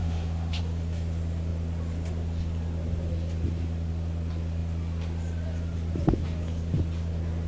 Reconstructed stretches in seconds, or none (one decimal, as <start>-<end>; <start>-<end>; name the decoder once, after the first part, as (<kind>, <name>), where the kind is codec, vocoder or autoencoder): 0.0-0.6 (autoencoder, DAC-VAE)